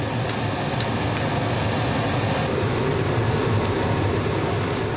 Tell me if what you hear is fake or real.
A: real